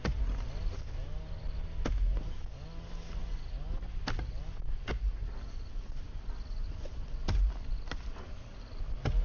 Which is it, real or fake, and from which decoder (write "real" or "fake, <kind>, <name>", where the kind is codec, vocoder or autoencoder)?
real